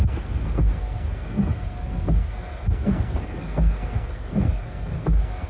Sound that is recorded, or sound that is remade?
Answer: remade